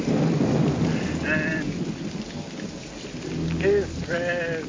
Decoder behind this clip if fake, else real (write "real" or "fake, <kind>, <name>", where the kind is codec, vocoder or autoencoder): real